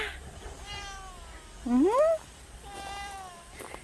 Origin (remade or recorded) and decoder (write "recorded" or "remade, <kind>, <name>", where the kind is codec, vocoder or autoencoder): recorded